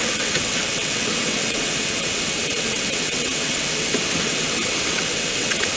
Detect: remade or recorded remade